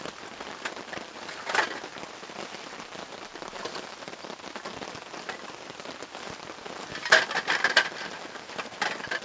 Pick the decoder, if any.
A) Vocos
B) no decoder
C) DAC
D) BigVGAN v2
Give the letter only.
B